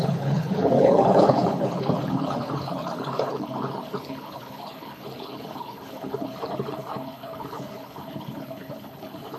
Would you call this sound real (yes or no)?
no